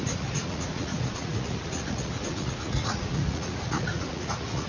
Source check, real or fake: fake